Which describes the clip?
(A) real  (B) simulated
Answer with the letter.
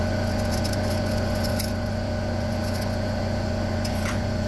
B